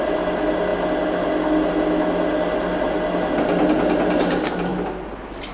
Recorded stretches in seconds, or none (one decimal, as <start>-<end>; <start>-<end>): 0.0-5.5